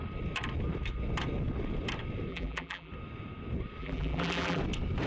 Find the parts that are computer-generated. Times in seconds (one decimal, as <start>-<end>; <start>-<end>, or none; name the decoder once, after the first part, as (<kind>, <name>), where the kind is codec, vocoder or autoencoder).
2.3-2.9 (vocoder, BigVGAN v2); 3.8-4.6